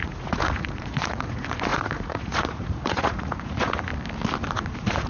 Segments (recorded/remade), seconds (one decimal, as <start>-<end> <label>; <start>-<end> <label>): 0.0-3.9 remade; 3.9-4.5 recorded; 4.5-5.1 remade